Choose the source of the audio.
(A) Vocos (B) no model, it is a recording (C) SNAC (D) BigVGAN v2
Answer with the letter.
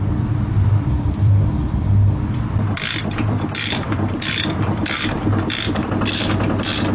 D